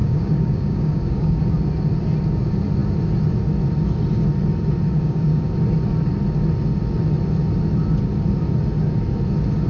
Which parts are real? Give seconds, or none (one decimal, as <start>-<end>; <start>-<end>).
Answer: 1.4-4.9; 5.5-9.7